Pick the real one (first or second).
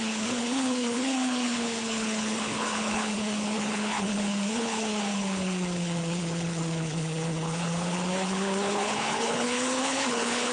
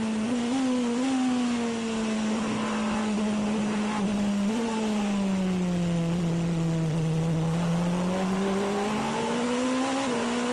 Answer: second